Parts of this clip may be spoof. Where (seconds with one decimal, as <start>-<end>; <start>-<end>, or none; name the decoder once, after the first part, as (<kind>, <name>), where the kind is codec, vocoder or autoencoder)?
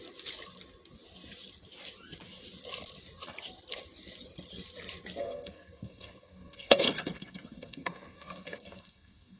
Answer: 5.2-9.4 (codec, SNAC)